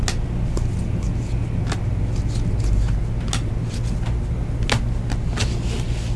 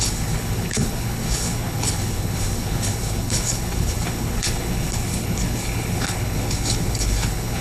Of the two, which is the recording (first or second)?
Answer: first